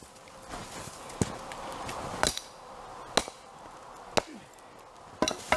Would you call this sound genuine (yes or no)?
yes